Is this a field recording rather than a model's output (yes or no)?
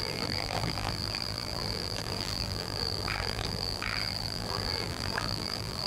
no